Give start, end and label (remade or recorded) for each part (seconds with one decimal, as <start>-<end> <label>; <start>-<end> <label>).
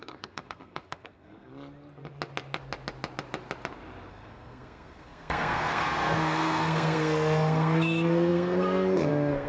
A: 0.0-1.5 remade; 1.5-4.1 recorded; 4.1-9.5 remade